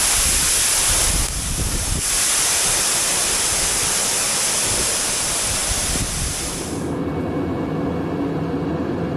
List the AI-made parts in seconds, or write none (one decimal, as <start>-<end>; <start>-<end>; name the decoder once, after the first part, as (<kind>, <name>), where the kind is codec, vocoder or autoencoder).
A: none